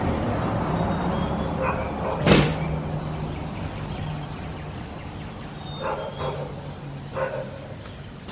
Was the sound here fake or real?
real